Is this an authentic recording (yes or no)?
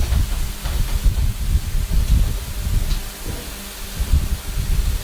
yes